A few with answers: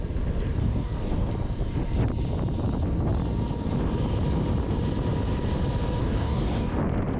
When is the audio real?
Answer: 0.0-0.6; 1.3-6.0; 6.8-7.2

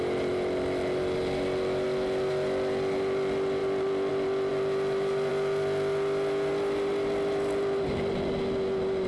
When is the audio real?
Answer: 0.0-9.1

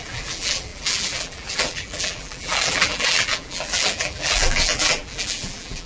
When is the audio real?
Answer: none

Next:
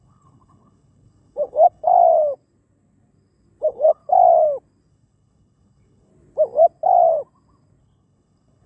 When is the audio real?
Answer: 1.9-3.6; 4.0-4.9; 6.1-7.8